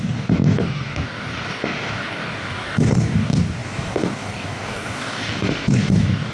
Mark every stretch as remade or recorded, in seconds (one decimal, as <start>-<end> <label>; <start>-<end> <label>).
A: 0.0-6.3 remade